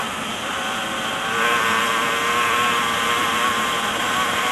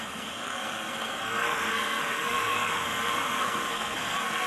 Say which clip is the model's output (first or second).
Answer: second